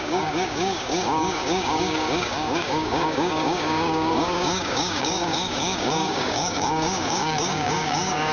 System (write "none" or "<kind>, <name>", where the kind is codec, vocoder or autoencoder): codec, DAC